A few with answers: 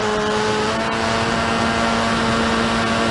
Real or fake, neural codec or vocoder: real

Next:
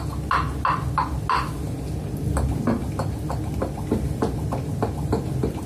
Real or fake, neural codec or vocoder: real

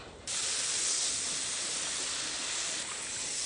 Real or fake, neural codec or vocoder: real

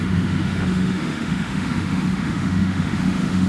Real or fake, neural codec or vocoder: fake, autoencoder, DAC-VAE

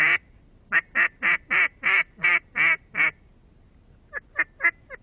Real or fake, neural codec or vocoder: real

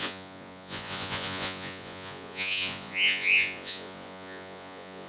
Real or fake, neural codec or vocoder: fake, vocoder, Vocos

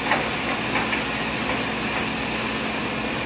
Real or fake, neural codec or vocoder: real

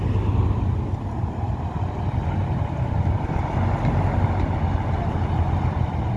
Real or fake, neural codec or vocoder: real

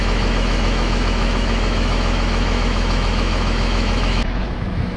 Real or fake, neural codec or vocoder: fake, autoencoder, DAC-VAE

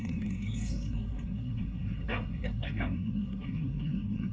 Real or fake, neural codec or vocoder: fake, codec, SNAC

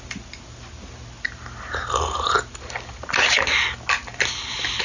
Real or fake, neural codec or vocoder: real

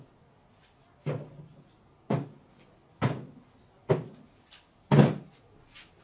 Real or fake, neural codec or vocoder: real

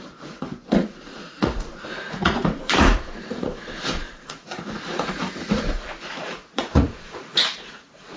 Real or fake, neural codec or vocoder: fake, vocoder, Vocos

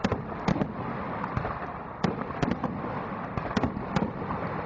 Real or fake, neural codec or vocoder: real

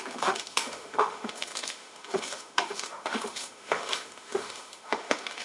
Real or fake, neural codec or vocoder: fake, autoencoder, DAC-VAE